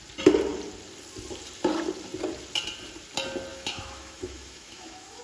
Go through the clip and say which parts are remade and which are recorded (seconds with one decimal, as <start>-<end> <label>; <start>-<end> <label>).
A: 0.0-3.5 recorded; 3.5-5.2 remade